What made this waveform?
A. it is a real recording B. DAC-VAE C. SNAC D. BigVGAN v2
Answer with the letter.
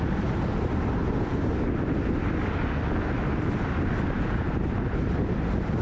A